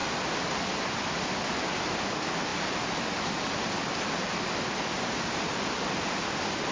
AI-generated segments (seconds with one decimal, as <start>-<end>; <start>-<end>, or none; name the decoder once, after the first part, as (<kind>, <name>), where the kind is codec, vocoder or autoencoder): none